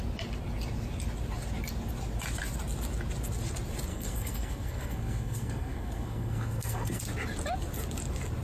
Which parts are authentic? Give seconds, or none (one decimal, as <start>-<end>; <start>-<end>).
0.0-3.9; 7.0-8.4